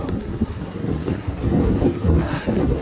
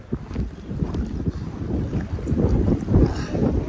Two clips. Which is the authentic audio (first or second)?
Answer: second